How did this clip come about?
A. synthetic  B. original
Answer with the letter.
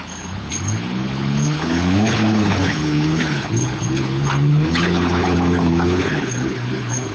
A